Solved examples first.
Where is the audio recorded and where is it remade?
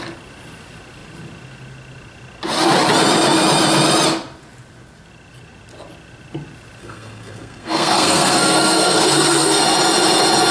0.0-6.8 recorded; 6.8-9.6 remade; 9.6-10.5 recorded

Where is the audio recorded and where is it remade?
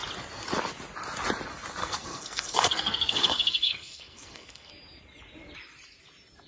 0.0-1.8 recorded; 1.8-4.7 remade; 4.7-6.5 recorded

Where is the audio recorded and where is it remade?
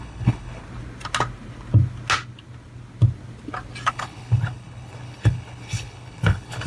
0.0-0.6 remade; 0.6-3.9 recorded; 3.9-6.7 remade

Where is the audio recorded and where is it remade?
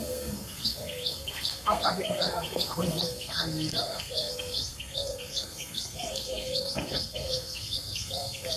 0.0-8.6 remade